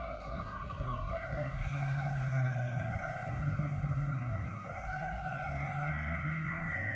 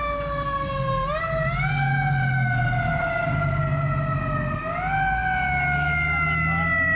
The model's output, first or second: first